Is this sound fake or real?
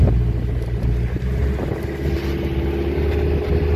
real